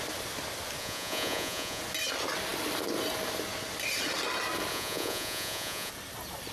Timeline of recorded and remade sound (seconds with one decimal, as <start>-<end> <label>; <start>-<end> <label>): 0.0-0.8 recorded; 0.8-1.8 remade; 1.8-4.7 recorded; 4.7-5.9 remade; 5.9-6.5 recorded

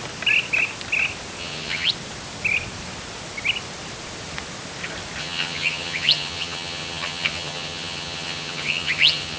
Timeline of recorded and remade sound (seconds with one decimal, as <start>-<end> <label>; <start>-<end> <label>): 0.0-1.4 recorded; 1.4-1.9 remade; 1.9-5.2 recorded; 5.2-9.4 remade

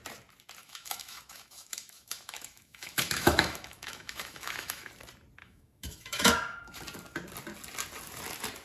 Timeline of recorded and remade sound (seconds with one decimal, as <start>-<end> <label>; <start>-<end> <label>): 0.0-0.6 recorded; 0.6-4.9 remade; 4.9-5.4 recorded; 5.4-6.8 remade; 6.8-8.6 recorded

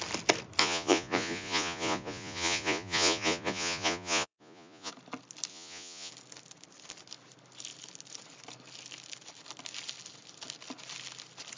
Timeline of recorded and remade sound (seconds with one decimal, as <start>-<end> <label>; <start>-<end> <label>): 0.0-0.6 recorded; 0.6-4.9 remade; 4.9-5.5 recorded; 5.5-6.1 remade; 6.1-11.6 recorded

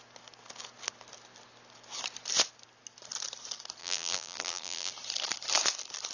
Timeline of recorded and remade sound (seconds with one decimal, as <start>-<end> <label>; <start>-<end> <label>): 0.0-3.8 recorded; 3.8-4.9 remade; 4.9-6.1 recorded

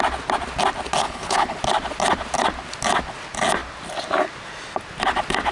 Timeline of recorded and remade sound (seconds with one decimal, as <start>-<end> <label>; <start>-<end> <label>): 0.0-1.0 recorded; 1.0-1.6 remade; 1.6-5.5 recorded